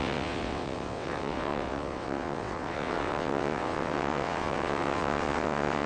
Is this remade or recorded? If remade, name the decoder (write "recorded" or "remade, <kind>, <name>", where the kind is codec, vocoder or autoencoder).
remade, vocoder, WaveNeXt